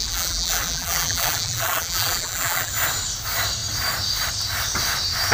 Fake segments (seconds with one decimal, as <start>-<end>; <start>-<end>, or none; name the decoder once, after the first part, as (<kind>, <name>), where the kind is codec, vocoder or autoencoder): 0.0-2.7 (vocoder, BigVGAN v2)